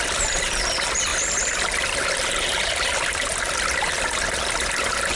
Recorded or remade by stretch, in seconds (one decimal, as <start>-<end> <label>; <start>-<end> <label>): 0.0-5.2 recorded